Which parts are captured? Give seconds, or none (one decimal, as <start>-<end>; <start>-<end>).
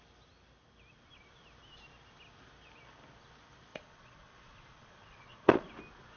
0.0-3.7; 5.7-6.2